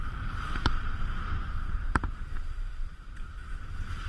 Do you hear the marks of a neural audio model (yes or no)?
yes